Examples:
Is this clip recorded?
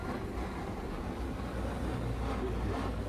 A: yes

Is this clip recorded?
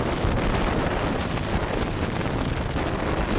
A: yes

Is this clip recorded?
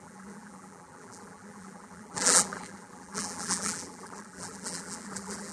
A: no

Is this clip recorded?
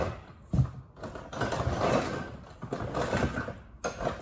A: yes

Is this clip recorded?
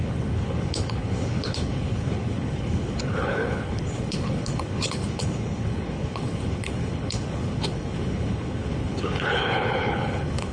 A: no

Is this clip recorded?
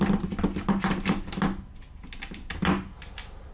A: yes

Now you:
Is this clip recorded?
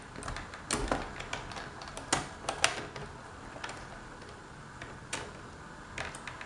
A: yes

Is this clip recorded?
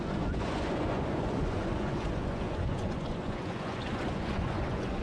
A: no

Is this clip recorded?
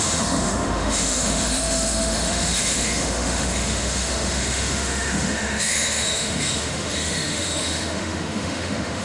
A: no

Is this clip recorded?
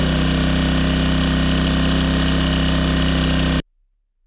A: yes